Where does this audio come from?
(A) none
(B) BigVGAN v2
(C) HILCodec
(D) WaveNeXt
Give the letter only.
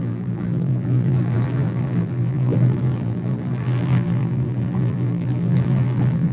B